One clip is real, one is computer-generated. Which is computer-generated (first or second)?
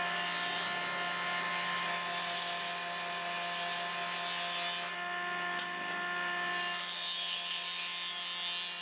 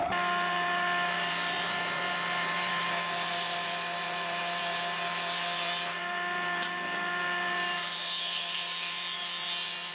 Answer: second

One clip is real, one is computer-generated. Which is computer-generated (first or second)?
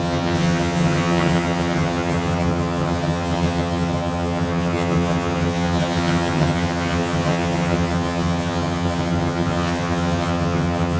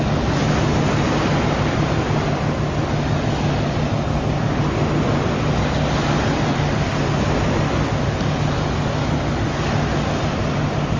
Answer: first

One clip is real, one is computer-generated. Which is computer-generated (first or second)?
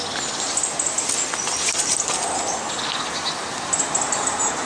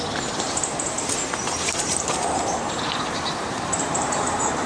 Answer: second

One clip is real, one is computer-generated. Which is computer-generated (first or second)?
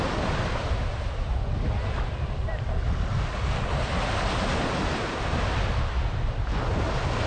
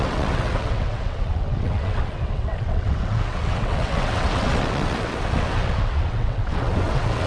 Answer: second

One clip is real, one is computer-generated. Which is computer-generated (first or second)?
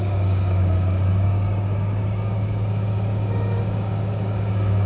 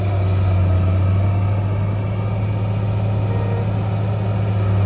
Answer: first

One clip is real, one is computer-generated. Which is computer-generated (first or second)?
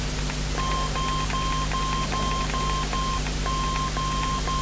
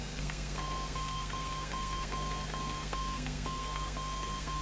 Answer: second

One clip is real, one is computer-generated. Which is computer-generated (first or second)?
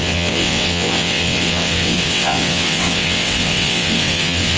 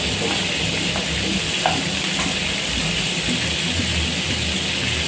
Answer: first